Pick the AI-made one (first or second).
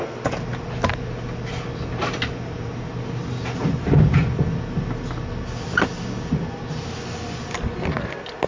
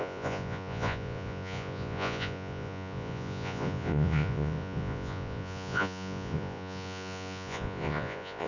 second